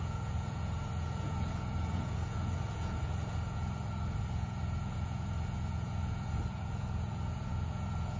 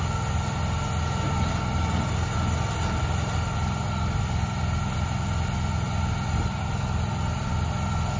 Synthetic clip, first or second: first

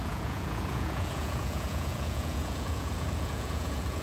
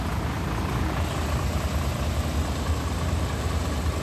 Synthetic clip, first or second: first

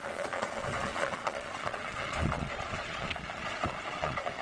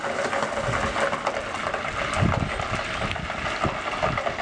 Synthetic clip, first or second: first